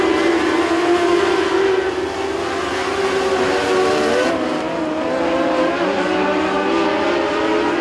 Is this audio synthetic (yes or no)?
no